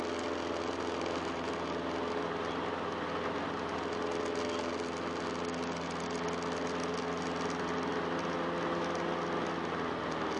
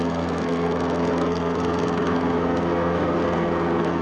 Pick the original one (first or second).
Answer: first